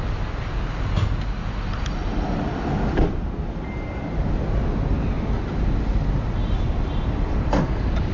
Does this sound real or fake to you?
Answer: real